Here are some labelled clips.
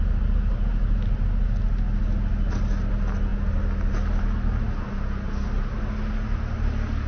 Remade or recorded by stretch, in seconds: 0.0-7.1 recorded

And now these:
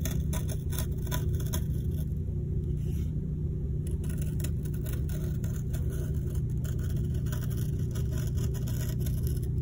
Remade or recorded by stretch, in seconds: 0.0-9.6 recorded

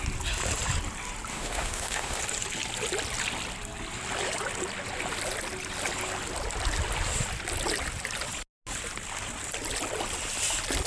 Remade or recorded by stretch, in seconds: 0.0-1.3 recorded; 1.3-2.2 remade; 2.2-10.9 recorded

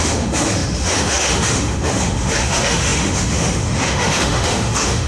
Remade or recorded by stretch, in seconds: 0.0-5.1 remade

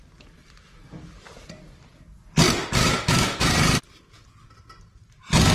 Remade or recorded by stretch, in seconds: 0.0-2.8 recorded; 2.8-3.5 remade; 3.5-5.5 recorded